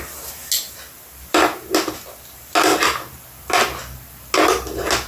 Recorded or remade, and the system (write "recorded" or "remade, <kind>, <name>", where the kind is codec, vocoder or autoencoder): recorded